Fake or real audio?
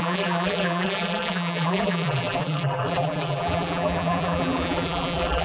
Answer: fake